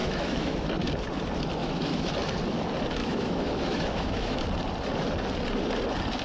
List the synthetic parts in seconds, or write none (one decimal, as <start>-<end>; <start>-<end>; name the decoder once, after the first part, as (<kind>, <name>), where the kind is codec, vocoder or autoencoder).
0.0-0.7 (autoencoder, DAC-VAE); 1.6-2.1; 3.0-4.4